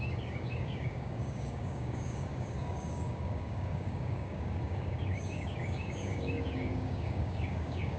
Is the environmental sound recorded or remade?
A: remade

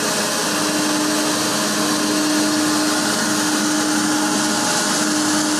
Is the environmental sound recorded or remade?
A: recorded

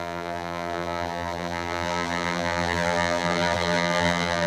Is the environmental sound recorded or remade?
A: remade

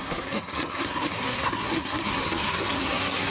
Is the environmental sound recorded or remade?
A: remade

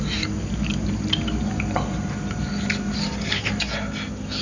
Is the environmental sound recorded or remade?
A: recorded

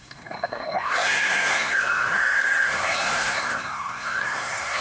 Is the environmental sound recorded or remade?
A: remade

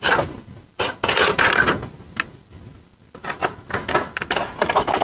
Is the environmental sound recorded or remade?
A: recorded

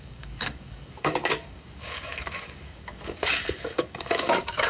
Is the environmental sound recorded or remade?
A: remade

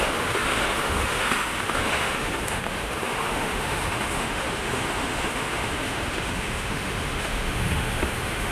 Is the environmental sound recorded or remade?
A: remade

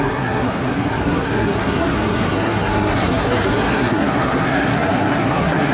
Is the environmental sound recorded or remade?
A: remade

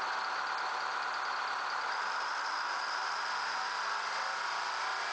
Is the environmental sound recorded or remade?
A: recorded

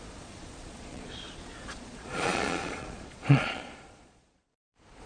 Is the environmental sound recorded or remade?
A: remade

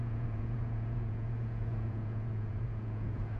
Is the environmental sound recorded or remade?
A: remade